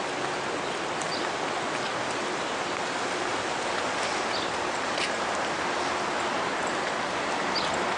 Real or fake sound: real